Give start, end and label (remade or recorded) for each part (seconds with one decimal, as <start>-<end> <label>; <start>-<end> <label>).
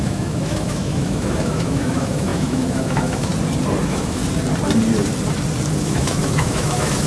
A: 0.0-3.3 remade; 3.3-3.8 recorded; 3.8-4.2 remade; 4.2-5.8 recorded; 5.8-7.1 remade